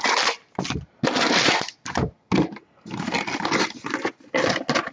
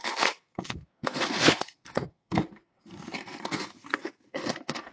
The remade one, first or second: second